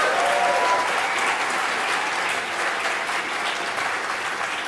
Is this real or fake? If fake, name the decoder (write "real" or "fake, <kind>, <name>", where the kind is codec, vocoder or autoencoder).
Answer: real